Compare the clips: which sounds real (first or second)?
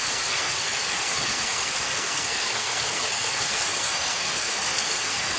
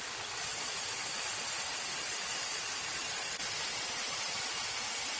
second